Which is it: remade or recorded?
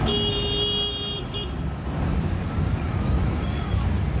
recorded